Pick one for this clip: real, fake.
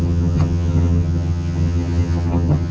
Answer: fake